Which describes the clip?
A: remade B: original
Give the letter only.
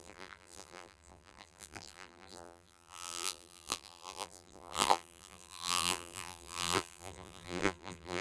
A